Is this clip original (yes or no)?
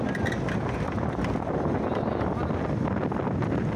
yes